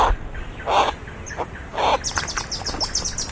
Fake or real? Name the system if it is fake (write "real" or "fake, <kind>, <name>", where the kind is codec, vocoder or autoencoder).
real